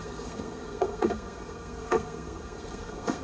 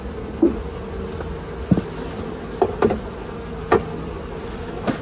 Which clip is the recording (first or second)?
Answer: second